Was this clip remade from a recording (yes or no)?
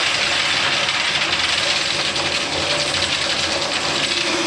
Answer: no